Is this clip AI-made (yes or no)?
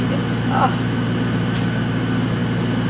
no